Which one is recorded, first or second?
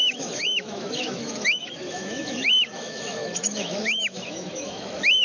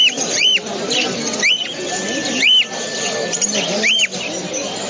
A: second